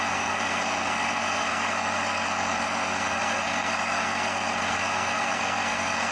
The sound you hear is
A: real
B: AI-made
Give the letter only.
B